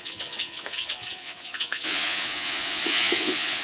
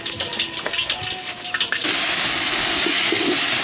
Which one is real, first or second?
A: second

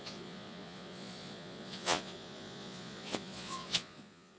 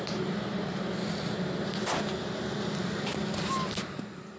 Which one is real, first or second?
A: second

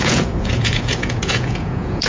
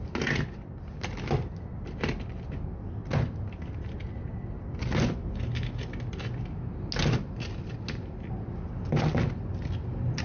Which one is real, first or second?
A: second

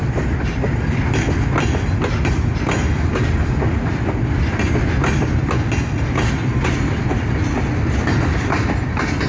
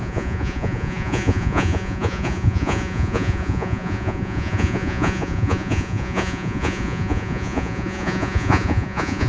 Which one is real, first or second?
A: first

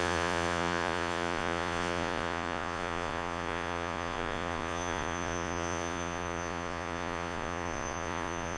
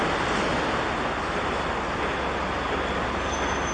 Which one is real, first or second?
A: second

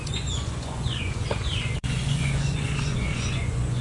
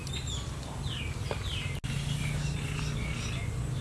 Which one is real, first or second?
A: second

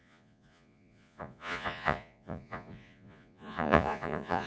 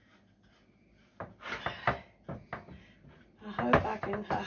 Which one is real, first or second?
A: second